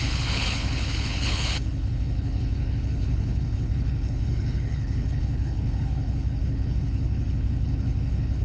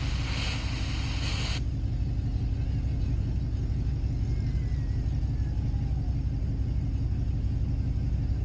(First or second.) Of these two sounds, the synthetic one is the first